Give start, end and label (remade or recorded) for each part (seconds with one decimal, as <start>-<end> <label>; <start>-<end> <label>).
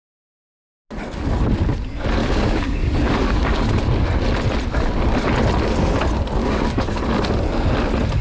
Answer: 0.0-2.2 recorded; 2.2-3.7 remade; 3.7-6.4 recorded; 6.4-7.0 remade; 7.0-8.2 recorded